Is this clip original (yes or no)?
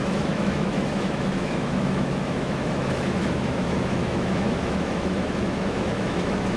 no